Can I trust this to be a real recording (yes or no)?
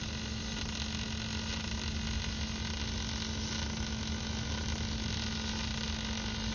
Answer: yes